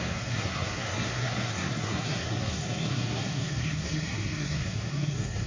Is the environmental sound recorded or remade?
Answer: remade